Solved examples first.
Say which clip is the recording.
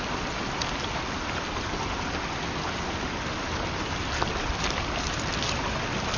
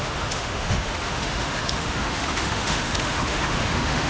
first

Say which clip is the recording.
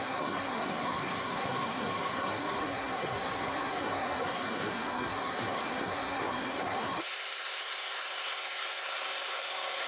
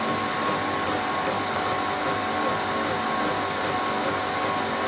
second